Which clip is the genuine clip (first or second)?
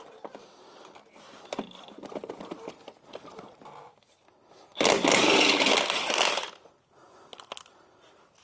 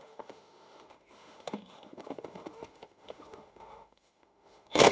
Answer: first